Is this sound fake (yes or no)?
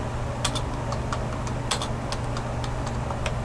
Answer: no